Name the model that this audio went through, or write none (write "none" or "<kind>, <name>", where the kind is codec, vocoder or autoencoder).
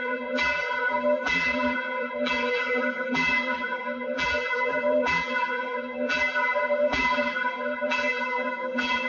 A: vocoder, BigVGAN v2